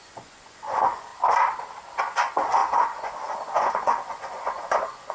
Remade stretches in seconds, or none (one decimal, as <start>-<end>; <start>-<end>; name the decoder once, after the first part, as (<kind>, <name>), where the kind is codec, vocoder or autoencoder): 0.0-1.1 (vocoder, Vocos); 2.0-5.1